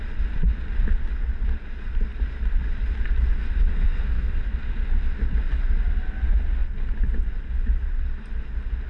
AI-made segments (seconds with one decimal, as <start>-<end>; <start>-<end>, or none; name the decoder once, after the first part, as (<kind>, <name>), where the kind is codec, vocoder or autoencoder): 3.7-4.4 (codec, SNAC)